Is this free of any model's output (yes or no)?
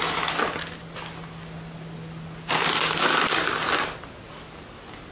yes